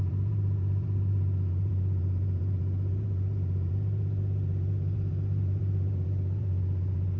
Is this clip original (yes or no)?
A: no